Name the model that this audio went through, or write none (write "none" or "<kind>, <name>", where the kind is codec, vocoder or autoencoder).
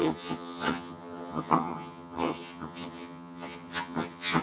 vocoder, HiFi-GAN